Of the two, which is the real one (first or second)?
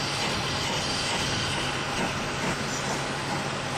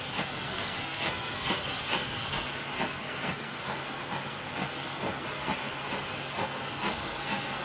first